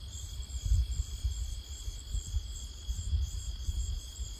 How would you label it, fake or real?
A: real